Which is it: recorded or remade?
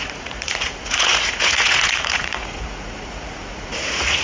remade